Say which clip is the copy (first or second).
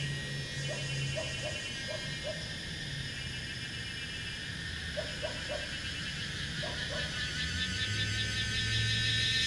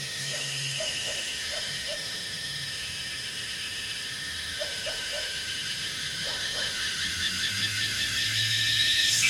second